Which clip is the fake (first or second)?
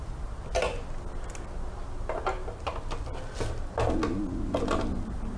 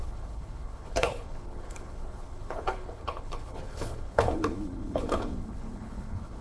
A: second